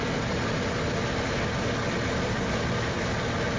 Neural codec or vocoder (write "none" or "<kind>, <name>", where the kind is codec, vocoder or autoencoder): none